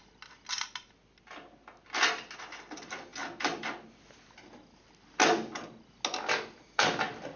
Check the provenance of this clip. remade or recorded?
recorded